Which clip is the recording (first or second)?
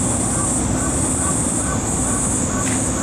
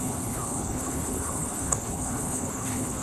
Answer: first